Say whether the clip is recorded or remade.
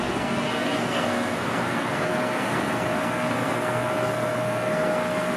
remade